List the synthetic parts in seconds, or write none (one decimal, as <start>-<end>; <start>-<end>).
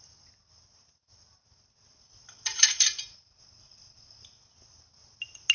2.5-3.3